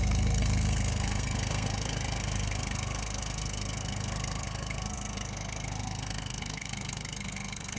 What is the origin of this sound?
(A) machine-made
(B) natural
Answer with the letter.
A